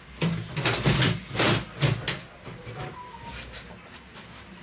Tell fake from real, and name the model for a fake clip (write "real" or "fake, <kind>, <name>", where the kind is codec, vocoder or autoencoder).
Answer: real